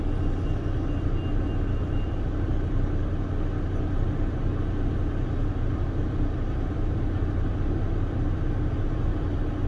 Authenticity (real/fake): real